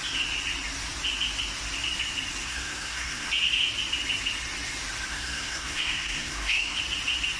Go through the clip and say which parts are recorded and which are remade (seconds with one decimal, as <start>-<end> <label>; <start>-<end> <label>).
0.0-2.4 recorded; 2.4-3.3 remade; 3.3-5.1 recorded; 5.1-6.8 remade; 6.8-7.4 recorded